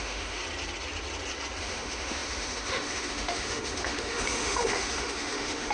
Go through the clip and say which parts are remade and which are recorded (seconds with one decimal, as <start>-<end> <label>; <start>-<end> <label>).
0.0-0.4 remade; 0.4-1.6 recorded; 1.6-5.7 remade